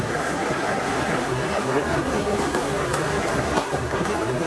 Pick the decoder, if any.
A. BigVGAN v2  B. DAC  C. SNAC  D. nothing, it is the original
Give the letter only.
C